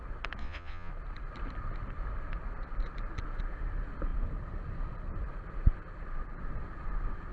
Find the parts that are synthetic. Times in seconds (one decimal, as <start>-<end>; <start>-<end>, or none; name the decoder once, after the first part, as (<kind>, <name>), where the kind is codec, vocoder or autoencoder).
0.4-0.9 (vocoder, Vocos)